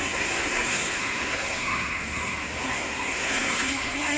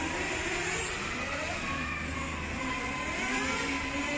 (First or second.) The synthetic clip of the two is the first